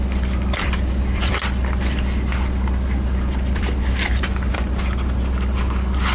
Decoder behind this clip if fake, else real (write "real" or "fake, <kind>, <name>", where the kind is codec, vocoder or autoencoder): fake, vocoder, BigVGAN v2